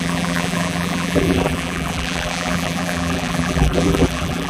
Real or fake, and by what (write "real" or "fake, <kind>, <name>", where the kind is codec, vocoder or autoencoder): fake, vocoder, BigVGAN v2